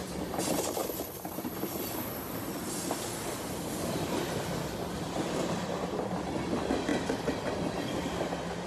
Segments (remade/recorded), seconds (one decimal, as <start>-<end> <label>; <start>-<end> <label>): 0.0-8.7 recorded